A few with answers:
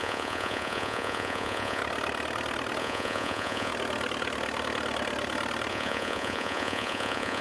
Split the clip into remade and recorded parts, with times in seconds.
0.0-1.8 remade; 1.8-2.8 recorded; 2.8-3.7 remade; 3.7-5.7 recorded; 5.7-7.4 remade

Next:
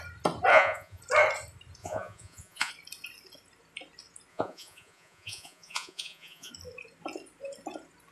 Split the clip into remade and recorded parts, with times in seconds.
0.0-0.5 recorded; 0.5-1.0 remade; 1.0-1.8 recorded; 1.8-2.7 remade; 2.7-4.3 recorded; 4.3-6.5 remade; 6.5-8.1 recorded

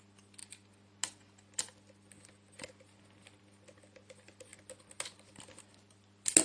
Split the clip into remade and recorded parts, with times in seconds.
0.0-6.4 recorded